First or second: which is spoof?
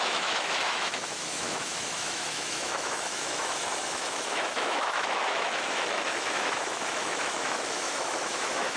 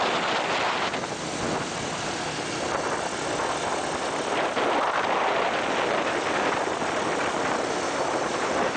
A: first